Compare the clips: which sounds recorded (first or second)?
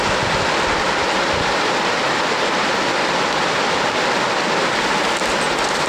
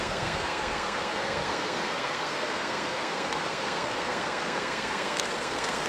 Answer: first